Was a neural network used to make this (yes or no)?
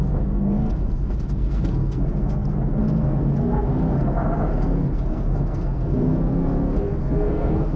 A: yes